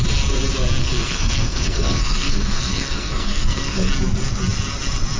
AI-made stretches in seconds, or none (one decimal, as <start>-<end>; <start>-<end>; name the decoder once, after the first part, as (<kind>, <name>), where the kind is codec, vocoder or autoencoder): 0.8-3.9 (codec, SNAC)